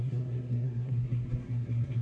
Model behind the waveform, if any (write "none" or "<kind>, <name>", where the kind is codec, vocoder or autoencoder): codec, SNAC